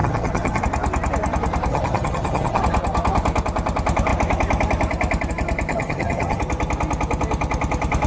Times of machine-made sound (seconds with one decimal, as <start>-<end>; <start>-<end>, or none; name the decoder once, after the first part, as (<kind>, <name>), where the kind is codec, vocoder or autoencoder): 0.0-0.6 (vocoder, HiFi-GAN); 1.7-2.6; 5.7-6.4